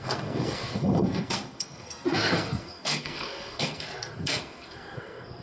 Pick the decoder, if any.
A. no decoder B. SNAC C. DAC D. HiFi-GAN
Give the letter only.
B